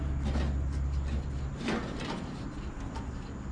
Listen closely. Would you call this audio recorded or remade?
recorded